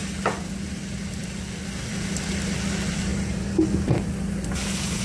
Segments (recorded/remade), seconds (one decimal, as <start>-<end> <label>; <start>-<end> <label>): 0.0-5.0 recorded